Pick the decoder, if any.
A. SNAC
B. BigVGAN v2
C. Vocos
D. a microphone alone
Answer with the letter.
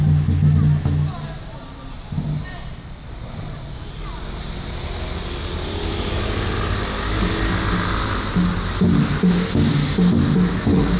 D